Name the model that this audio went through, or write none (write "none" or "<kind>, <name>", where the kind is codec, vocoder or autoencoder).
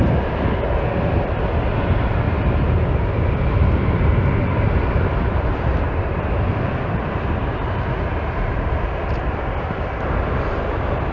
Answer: none